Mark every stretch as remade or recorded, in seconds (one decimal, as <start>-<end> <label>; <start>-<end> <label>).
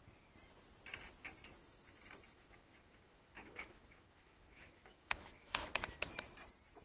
0.0-1.6 recorded; 1.6-5.7 remade; 5.7-6.8 recorded